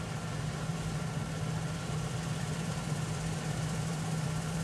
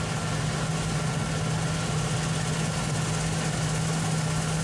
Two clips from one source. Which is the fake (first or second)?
first